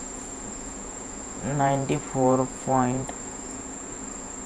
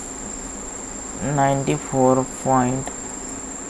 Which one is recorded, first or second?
second